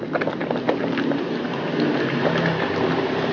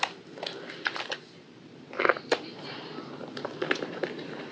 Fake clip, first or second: second